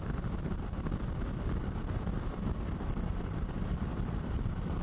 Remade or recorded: remade